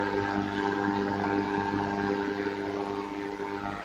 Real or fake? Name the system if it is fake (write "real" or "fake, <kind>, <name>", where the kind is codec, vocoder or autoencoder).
real